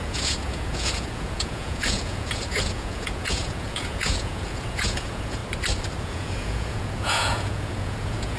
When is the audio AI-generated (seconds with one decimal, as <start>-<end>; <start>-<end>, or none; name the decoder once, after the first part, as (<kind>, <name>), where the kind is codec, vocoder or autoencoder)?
0.0-5.4 (vocoder, Vocos); 6.0-8.4